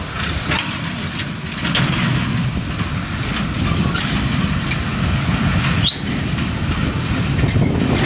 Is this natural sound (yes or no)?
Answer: yes